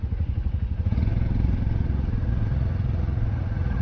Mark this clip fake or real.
fake